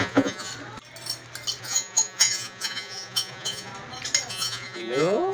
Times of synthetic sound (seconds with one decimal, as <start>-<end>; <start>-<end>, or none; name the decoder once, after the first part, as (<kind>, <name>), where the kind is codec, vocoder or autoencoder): 0.0-0.5 (vocoder, Vocos); 1.6-3.7; 4.3-5.3